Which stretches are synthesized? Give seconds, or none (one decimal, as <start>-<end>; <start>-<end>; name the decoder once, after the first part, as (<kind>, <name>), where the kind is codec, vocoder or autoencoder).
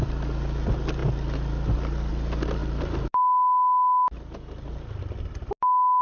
none